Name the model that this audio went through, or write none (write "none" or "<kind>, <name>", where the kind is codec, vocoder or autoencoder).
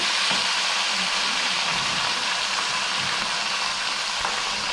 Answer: none